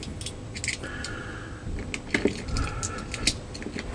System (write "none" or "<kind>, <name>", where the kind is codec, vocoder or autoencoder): none